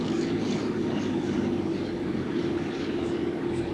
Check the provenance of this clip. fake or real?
fake